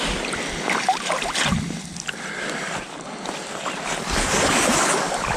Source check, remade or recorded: recorded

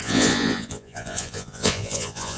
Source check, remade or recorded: remade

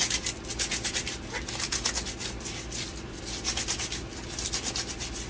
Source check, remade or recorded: recorded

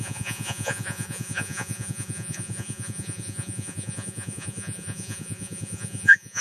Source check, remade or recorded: remade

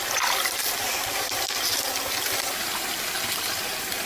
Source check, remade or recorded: recorded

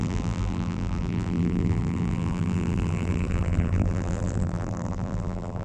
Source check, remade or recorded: remade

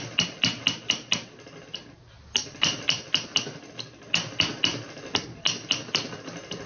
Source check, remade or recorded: recorded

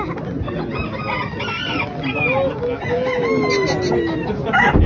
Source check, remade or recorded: recorded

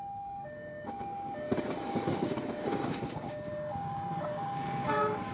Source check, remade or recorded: remade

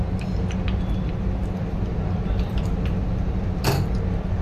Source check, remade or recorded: recorded